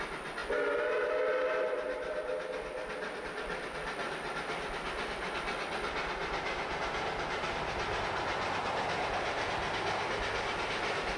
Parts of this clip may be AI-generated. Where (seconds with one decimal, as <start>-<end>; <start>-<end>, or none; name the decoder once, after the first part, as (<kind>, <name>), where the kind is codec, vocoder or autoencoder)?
none

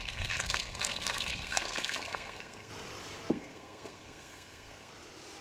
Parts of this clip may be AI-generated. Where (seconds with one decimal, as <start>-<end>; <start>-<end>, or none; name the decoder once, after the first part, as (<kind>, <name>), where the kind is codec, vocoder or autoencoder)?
0.0-2.7 (codec, SNAC); 3.3-4.9